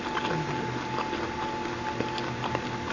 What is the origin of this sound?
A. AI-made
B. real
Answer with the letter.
B